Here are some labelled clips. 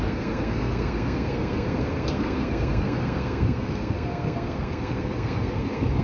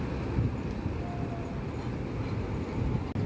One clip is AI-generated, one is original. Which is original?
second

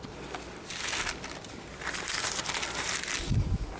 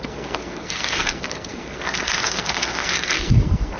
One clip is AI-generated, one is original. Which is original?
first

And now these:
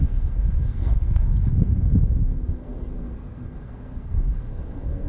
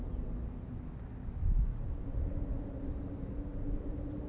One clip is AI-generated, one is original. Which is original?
second